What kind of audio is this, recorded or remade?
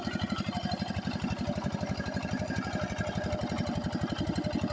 recorded